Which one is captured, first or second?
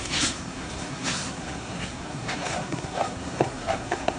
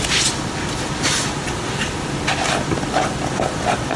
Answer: second